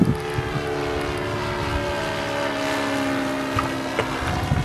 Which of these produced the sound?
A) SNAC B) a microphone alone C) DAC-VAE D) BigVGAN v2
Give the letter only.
B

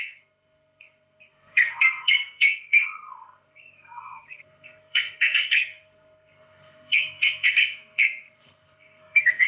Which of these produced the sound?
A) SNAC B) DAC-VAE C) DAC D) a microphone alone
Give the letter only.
A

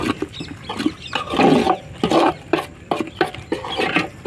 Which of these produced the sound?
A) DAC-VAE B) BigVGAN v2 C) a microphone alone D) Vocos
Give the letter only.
C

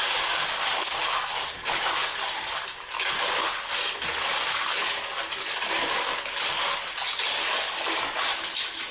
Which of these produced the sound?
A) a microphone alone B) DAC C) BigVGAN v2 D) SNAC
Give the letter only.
A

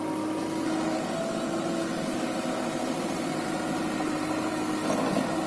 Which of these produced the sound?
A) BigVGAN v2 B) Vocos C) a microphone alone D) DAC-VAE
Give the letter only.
C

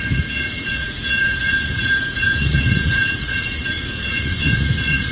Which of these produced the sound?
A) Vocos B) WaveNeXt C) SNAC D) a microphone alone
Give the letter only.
A